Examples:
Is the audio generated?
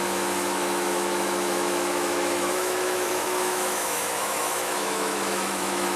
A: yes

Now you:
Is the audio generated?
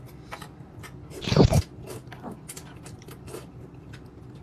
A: no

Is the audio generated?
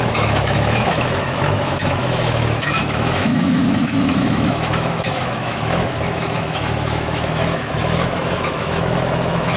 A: yes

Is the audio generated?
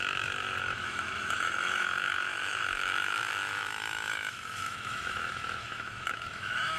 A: yes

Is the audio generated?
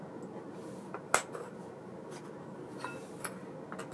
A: no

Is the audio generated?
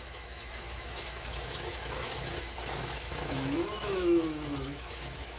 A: yes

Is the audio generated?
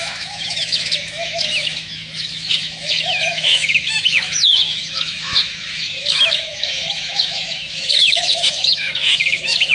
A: yes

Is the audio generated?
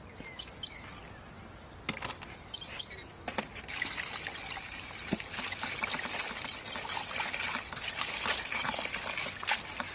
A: no